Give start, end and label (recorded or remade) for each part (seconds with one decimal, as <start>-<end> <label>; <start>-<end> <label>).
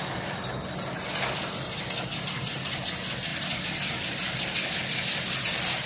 0.0-5.9 recorded